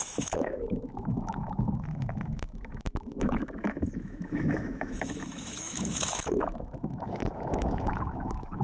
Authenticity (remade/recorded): remade